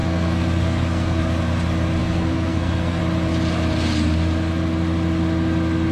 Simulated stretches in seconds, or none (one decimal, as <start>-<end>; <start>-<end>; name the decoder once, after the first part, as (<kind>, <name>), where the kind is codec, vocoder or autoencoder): 0.0-1.2 (codec, SNAC); 2.0-3.0